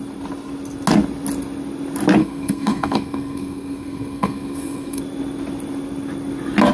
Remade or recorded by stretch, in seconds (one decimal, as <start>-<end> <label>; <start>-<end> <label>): 0.0-2.2 recorded; 2.2-5.0 remade; 5.0-6.7 recorded